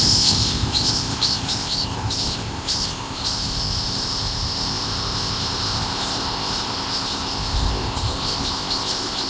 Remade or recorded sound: remade